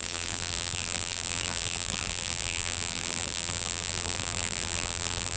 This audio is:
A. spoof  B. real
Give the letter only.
A